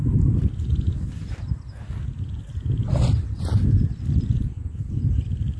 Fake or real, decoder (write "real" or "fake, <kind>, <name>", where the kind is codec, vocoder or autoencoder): real